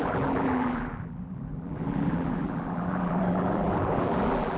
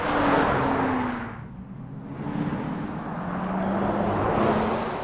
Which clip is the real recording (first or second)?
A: second